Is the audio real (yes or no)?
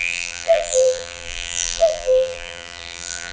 no